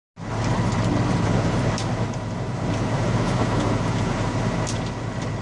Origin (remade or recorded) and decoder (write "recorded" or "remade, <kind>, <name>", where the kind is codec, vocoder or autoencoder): recorded